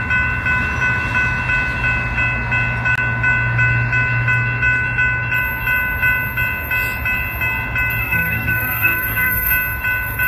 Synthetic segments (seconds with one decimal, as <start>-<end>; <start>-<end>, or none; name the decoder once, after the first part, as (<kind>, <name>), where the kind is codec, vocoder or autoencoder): 8.0-9.5 (codec, SNAC)